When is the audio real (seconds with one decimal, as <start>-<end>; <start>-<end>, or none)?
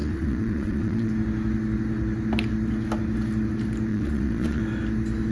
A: 1.1-3.9; 4.6-5.3